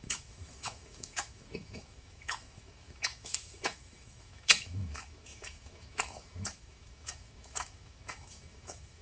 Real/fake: fake